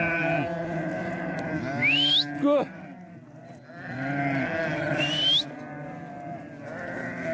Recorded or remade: recorded